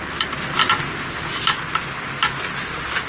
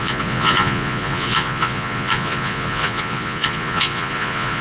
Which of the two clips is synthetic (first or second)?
second